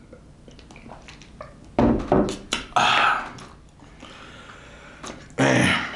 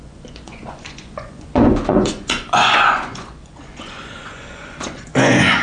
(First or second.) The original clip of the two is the first